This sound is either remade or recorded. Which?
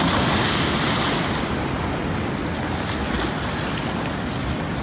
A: recorded